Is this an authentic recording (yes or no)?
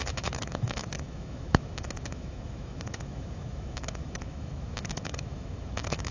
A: no